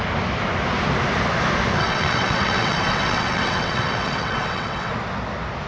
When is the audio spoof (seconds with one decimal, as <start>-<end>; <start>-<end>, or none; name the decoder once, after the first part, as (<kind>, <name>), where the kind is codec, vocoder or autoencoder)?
1.8-4.9 (vocoder, WaveNeXt)